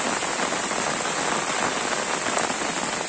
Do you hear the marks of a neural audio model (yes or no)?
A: no